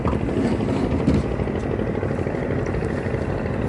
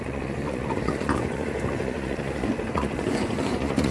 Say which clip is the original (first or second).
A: first